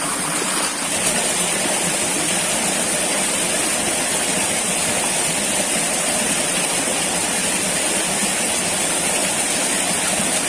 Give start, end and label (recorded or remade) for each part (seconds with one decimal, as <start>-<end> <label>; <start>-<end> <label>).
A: 0.0-10.5 recorded